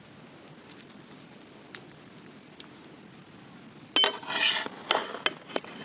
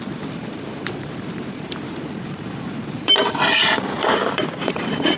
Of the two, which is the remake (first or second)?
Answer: second